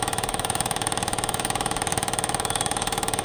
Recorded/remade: remade